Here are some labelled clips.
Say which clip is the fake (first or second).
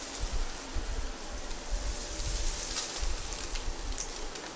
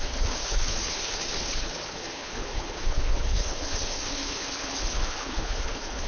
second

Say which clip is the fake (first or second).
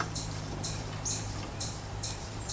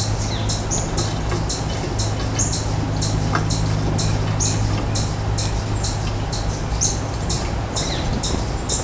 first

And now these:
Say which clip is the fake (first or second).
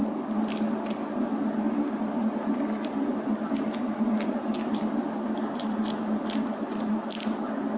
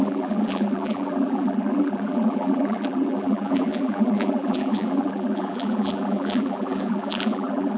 second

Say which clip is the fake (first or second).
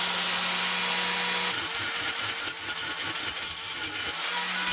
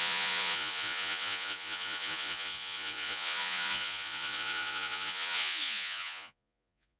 second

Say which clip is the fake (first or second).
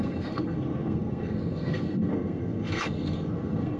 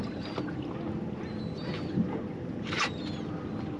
first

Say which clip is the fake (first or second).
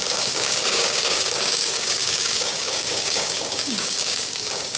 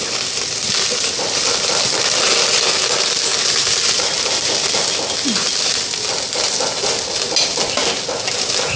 first